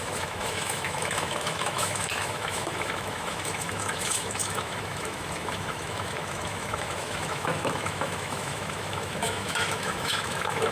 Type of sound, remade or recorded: remade